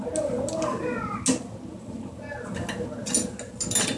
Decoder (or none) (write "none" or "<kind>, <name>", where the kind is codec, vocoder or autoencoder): none